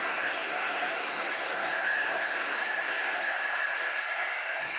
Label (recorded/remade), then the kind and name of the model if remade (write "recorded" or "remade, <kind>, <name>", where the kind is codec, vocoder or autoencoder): remade, codec, SNAC